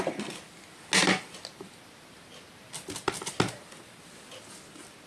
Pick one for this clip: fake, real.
real